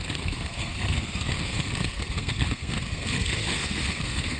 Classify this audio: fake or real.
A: fake